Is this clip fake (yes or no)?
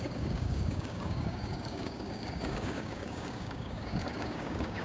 yes